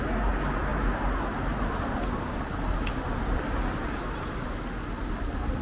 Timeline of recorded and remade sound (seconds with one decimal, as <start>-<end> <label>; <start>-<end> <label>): 0.0-5.6 recorded